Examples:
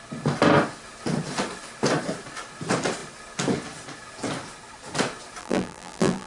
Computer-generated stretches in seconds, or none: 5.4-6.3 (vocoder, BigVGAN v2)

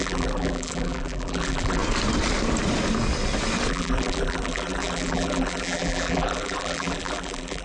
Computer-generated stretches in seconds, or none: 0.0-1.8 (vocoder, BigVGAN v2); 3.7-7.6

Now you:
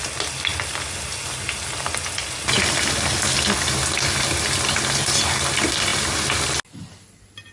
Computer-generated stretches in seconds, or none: none